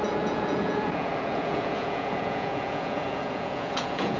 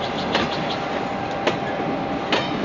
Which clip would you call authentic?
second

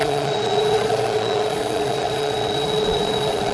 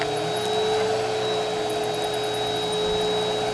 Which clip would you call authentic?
second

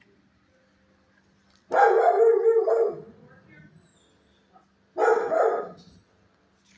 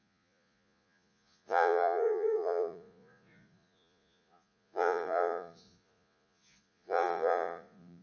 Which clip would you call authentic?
first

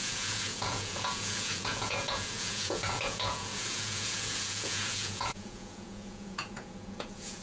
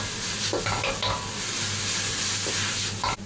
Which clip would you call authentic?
second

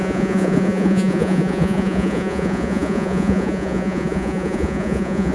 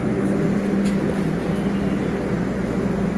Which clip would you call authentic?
second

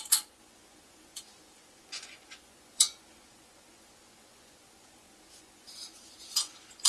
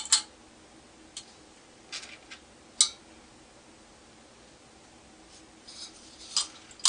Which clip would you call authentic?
second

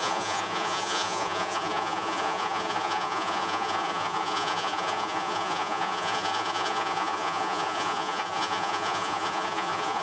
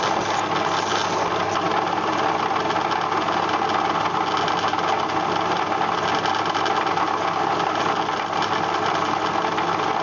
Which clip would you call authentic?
second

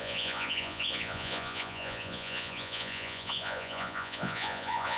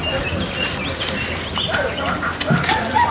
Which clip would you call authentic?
second